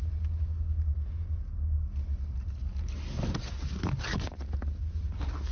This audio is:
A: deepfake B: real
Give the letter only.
B